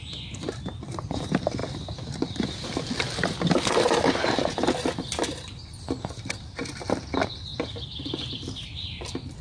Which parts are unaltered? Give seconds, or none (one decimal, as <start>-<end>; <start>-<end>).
none